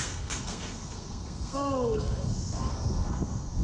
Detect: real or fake fake